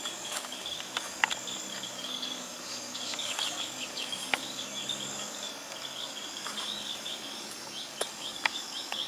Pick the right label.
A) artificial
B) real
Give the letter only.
A